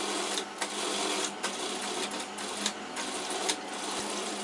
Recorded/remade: recorded